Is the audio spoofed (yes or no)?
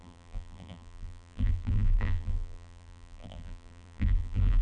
yes